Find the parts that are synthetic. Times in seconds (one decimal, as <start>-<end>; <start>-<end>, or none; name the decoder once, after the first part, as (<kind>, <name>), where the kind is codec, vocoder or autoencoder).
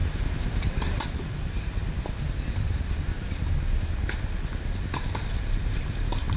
0.0-1.8 (vocoder, BigVGAN v2); 5.6-6.4